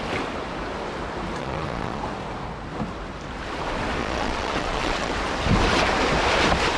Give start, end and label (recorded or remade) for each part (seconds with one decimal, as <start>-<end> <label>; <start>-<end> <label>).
0.0-1.4 recorded; 1.4-2.0 remade; 2.0-4.0 recorded; 4.0-5.1 remade; 5.1-6.8 recorded

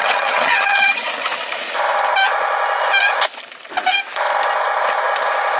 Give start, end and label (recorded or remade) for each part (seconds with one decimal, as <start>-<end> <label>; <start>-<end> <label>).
0.0-1.1 remade; 1.1-5.6 recorded